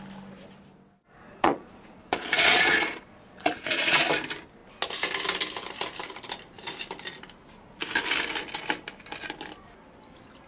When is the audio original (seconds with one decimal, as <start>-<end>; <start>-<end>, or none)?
0.0-1.3; 4.1-10.5